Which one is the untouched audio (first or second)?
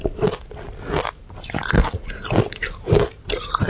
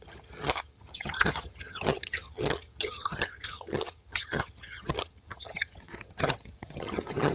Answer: first